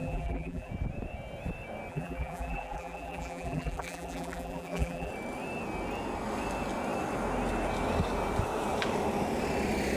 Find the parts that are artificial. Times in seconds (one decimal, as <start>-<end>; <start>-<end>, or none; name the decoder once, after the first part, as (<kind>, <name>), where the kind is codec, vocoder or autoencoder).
0.0-0.7 (vocoder, BigVGAN v2); 1.9-5.1